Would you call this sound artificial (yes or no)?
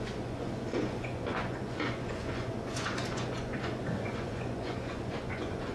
yes